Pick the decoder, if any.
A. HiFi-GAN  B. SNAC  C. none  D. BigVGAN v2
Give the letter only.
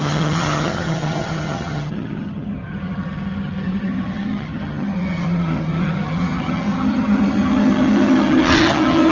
A